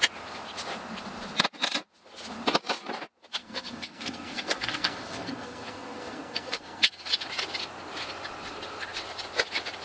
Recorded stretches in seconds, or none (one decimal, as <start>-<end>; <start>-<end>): 0.0-3.4; 7.1-9.8